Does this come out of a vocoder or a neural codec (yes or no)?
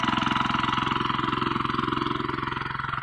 no